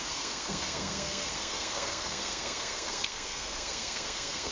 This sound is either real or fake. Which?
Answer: fake